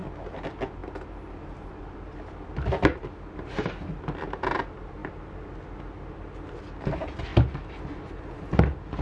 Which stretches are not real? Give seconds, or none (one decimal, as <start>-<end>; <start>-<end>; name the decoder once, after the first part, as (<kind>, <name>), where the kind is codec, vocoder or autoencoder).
none